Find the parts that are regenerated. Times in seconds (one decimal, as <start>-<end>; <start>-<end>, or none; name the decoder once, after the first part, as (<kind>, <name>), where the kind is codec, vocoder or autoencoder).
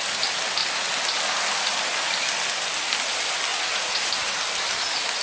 3.5-4.1 (vocoder, Vocos)